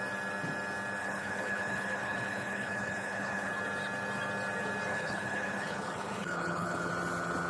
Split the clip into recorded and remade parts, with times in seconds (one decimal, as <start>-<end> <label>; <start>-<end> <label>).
0.0-1.0 recorded; 1.0-3.5 remade; 3.5-4.9 recorded; 4.9-6.9 remade; 6.9-7.5 recorded